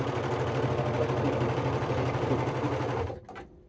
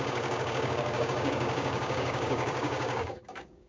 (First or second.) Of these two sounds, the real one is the first